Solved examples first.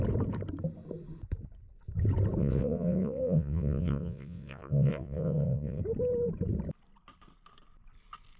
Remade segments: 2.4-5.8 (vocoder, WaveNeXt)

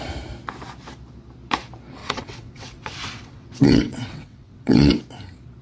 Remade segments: 2.0-5.0 (vocoder, WaveNeXt)

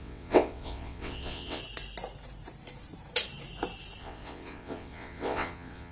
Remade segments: 0.0-1.6 (vocoder, WaveNeXt); 4.0-5.9

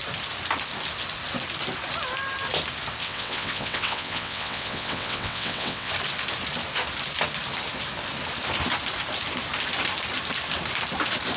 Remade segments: 3.0-5.9 (vocoder, WaveNeXt)